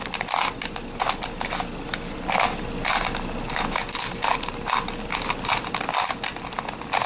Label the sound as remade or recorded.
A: recorded